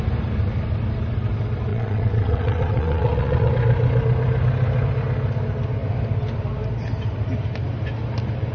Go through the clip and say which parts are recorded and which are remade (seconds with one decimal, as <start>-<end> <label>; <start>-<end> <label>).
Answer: 0.0-1.7 recorded; 1.7-3.5 remade; 3.5-8.5 recorded